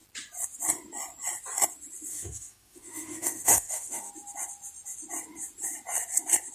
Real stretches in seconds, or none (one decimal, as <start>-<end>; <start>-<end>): 0.0-2.1; 4.1-6.5